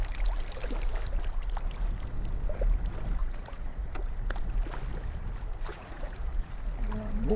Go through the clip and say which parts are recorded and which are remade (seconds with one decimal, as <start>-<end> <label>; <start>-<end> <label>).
0.0-3.2 recorded; 3.2-3.9 remade; 3.9-5.7 recorded; 5.7-6.5 remade; 6.5-7.4 recorded